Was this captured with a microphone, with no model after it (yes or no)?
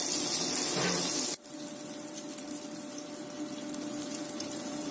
yes